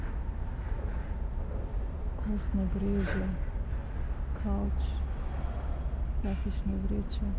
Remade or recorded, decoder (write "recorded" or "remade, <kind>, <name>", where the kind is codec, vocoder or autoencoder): recorded